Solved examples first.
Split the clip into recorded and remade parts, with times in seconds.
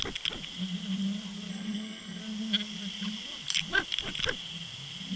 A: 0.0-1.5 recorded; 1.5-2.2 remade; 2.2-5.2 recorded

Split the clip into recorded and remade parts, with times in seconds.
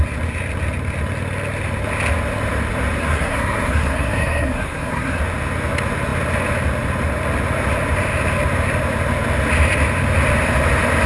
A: 0.0-3.0 recorded; 3.0-5.2 remade; 5.2-11.1 recorded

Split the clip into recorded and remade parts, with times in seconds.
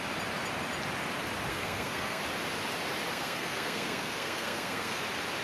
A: 0.0-1.5 recorded; 1.5-2.2 remade; 2.2-3.1 recorded; 3.1-5.0 remade; 5.0-5.4 recorded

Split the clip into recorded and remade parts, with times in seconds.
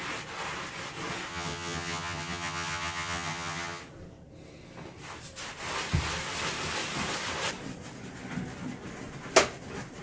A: 0.0-1.3 recorded; 1.3-3.8 remade; 3.8-10.0 recorded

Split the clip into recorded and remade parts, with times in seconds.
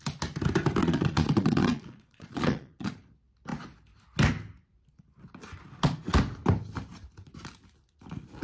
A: 0.0-0.8 recorded; 0.8-2.9 remade; 2.9-8.4 recorded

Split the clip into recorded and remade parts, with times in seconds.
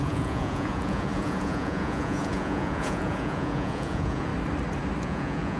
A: 0.0-4.3 remade; 4.3-5.0 recorded; 5.0-5.6 remade